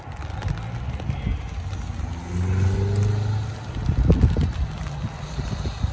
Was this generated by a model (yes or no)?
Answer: no